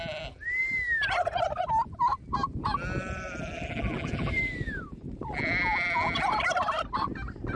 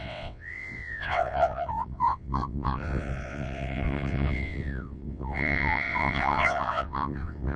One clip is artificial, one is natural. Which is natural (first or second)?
first